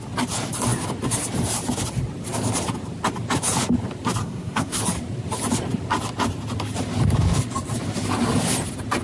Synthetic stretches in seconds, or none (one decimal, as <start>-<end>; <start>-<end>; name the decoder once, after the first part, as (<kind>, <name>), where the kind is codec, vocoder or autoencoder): 4.2-4.8 (codec, SNAC)